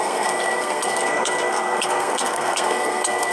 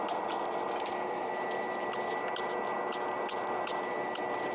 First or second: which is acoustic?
second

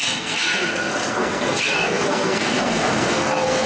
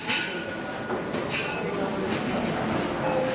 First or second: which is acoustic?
second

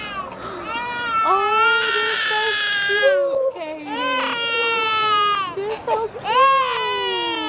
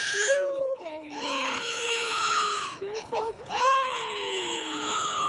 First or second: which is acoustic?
first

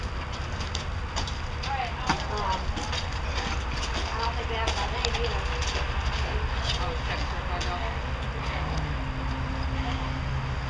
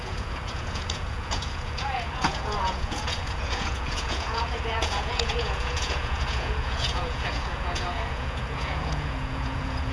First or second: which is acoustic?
first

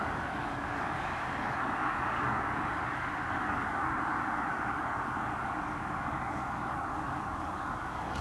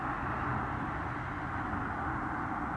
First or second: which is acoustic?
second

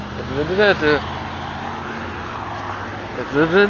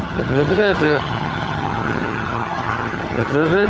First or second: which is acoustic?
first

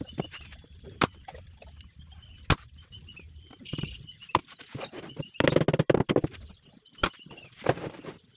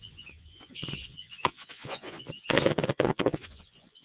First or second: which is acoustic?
first